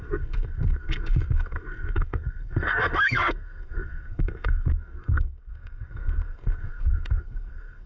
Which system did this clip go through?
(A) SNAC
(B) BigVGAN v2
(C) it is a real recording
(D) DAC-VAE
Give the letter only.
A